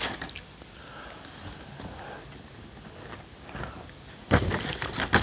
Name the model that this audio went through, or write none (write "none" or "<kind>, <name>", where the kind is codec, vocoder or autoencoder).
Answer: none